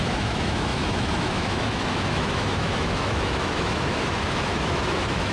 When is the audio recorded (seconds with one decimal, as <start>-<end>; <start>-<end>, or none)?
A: none